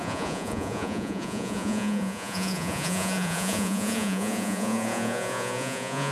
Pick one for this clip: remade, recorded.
remade